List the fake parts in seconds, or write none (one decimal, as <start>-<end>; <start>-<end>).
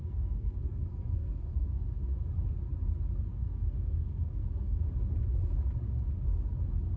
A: 0.0-2.0; 3.3-4.8